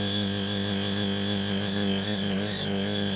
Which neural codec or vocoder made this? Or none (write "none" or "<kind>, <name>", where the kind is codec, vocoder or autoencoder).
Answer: codec, ZipCodec